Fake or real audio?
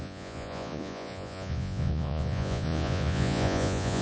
fake